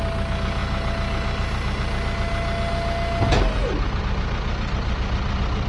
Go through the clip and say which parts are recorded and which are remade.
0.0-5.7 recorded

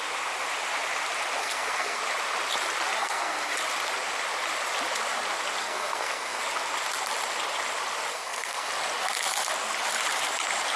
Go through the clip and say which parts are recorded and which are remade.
0.0-1.4 recorded; 1.4-2.0 remade; 2.0-3.0 recorded; 3.0-3.5 remade; 3.5-5.6 recorded; 5.6-6.4 remade; 6.4-8.1 recorded; 8.1-8.7 remade; 8.7-10.8 recorded

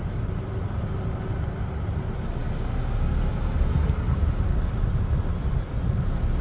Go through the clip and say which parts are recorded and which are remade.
0.0-6.4 recorded

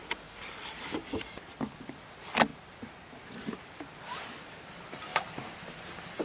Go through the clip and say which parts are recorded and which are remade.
0.0-6.2 recorded

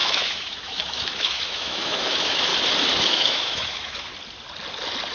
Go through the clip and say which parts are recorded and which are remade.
0.0-2.5 remade; 2.5-3.0 recorded; 3.0-4.1 remade; 4.1-5.1 recorded

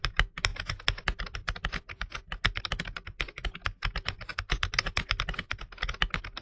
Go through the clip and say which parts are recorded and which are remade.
0.0-4.3 recorded; 4.3-5.1 remade; 5.1-6.4 recorded

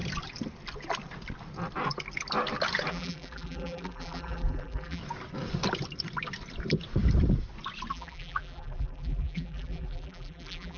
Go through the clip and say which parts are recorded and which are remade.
0.0-2.9 recorded; 2.9-5.0 remade; 5.0-7.9 recorded; 7.9-10.8 remade

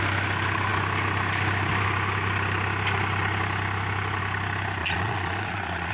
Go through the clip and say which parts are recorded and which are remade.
0.0-4.8 recorded; 4.8-5.9 remade